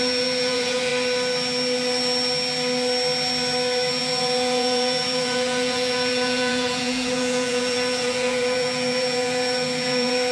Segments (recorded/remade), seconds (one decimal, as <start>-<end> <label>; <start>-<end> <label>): 0.0-0.9 remade; 0.9-3.9 recorded; 3.9-10.3 remade